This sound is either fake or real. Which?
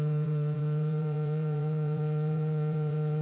fake